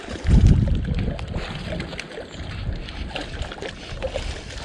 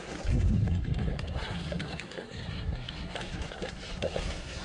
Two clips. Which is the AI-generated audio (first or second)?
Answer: second